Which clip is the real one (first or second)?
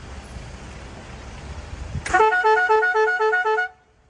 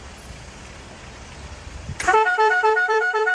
first